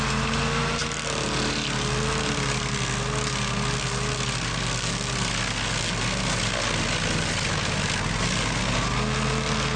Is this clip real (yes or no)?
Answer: yes